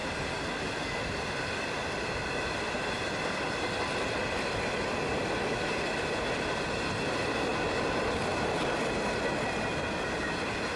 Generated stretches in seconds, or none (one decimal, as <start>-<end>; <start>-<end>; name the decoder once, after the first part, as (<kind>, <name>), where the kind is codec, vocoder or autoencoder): none